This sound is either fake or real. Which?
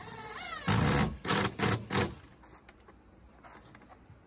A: real